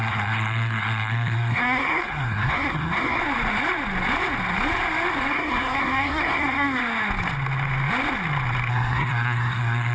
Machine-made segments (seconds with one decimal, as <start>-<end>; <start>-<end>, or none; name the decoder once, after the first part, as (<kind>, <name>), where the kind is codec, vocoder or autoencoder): 0.0-3.2 (codec, SNAC); 5.3-6.8; 8.7-9.9